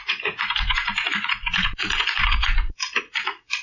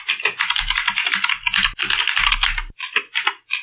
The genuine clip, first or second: second